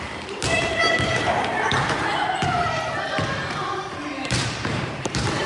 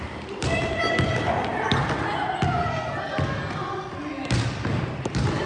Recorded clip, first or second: second